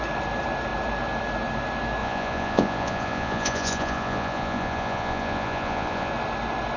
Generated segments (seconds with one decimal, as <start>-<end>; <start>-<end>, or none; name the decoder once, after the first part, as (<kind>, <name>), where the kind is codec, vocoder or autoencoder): 2.0-6.1 (vocoder, Vocos)